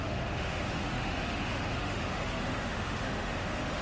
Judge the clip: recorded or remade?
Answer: remade